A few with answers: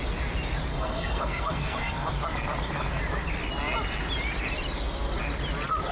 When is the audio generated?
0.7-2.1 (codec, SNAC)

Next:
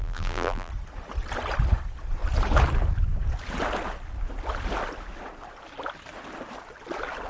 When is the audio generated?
0.0-0.7 (vocoder, BigVGAN v2)

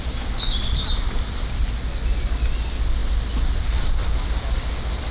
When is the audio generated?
none

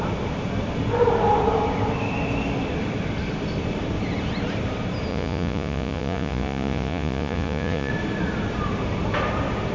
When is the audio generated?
5.1-7.9 (vocoder, Vocos)

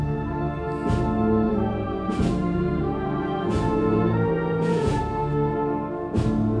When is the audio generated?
1.5-5.0 (vocoder, Vocos)